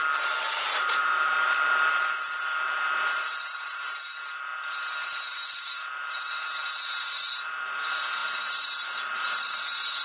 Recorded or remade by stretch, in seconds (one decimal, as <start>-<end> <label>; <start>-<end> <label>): 0.0-0.6 recorded; 0.6-10.0 remade